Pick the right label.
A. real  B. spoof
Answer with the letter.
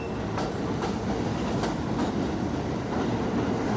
A